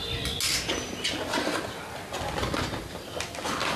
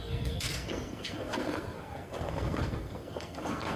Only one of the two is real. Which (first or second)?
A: first